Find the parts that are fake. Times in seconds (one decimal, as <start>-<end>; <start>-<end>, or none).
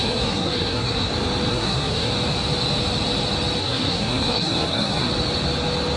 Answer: 0.0-1.1; 1.5-2.1; 3.6-5.1